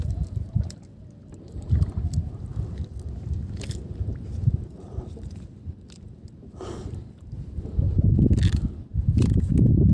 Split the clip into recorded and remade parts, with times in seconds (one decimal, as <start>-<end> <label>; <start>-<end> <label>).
0.0-9.9 recorded